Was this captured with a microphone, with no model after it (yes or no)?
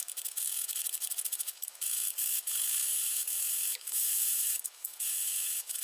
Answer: no